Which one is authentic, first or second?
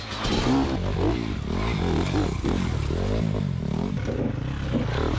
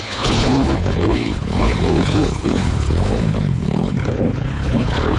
first